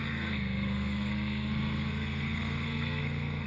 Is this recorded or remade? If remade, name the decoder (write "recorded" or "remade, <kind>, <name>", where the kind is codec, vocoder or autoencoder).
remade, codec, SNAC